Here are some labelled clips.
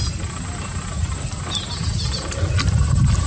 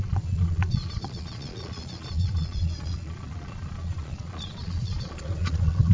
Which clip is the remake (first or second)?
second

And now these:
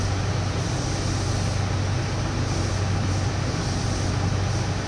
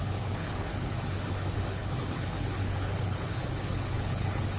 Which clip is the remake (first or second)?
second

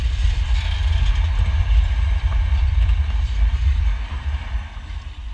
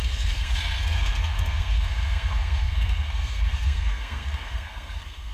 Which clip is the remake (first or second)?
second